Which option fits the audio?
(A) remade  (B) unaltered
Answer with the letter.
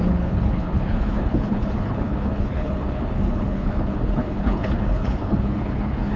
A